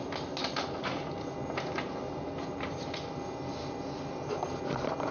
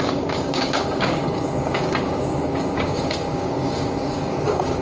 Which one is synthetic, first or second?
second